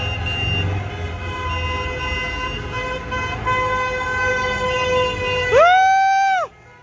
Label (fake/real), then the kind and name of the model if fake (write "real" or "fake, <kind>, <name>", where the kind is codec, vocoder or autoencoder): real